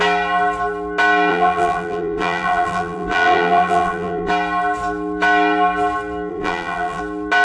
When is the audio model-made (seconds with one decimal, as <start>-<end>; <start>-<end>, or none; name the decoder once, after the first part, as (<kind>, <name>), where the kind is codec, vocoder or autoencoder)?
1.3-4.3 (vocoder, BigVGAN v2); 6.3-7.0